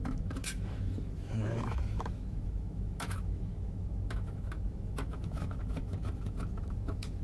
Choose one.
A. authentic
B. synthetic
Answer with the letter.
B